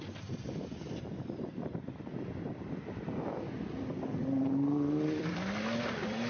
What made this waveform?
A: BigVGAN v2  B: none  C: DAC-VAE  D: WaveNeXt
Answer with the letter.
A